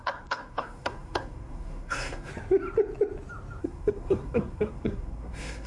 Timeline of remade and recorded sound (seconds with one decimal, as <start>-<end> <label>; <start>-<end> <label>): 0.0-2.3 remade; 2.3-3.6 recorded; 3.6-5.7 remade